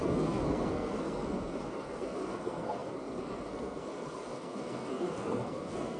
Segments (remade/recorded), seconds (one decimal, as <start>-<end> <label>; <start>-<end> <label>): 0.0-6.0 remade